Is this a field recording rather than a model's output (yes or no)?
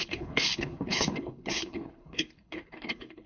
no